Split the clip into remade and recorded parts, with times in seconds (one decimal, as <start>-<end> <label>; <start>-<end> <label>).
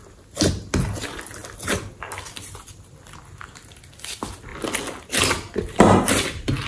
0.0-6.7 recorded